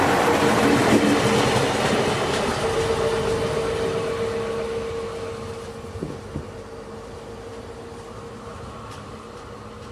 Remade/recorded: recorded